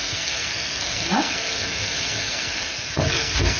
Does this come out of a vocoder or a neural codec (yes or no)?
yes